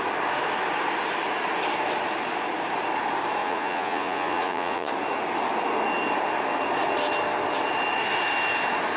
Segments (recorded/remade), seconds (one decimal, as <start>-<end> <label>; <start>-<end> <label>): 0.0-3.4 recorded; 3.4-4.9 remade; 4.9-9.0 recorded